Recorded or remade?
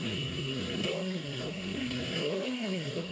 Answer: remade